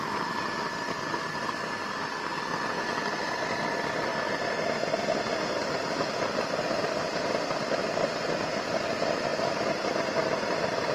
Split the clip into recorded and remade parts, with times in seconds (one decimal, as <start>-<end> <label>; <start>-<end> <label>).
0.0-10.9 recorded